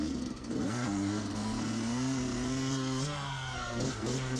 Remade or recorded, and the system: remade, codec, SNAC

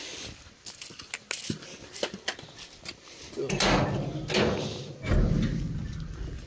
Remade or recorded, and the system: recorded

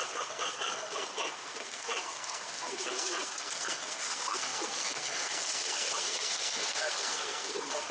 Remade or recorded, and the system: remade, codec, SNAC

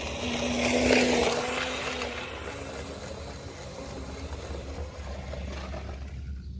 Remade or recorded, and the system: recorded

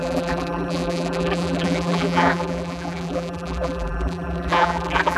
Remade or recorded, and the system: remade, vocoder, BigVGAN v2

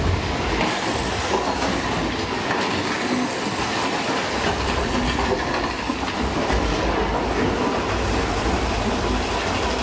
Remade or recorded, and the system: recorded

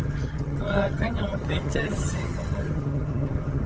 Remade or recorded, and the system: remade, vocoder, HiFi-GAN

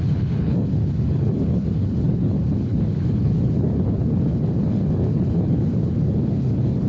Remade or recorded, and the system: remade, codec, HILCodec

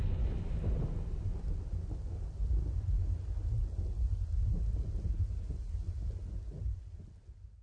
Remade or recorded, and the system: recorded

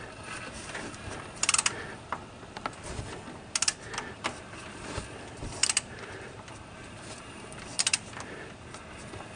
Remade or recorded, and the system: recorded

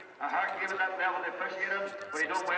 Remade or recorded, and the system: recorded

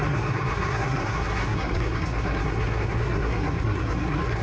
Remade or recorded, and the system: remade, codec, SNAC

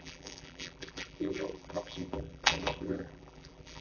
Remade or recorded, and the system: remade, vocoder, BigVGAN v2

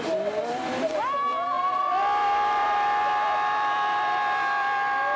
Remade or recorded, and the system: remade, vocoder, BigVGAN v2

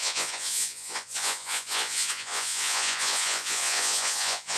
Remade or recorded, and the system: remade, vocoder, Vocos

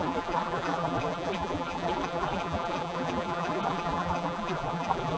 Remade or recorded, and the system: remade, vocoder, BigVGAN v2